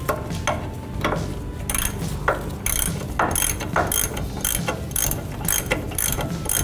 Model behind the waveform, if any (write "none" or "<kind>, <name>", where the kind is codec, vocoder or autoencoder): none